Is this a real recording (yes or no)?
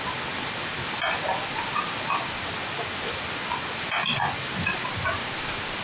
yes